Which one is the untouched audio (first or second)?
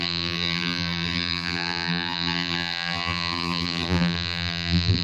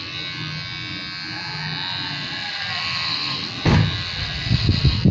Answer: second